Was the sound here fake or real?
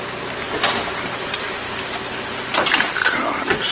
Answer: real